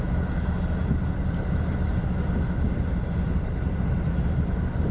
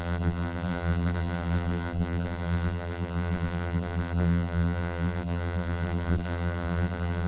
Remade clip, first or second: second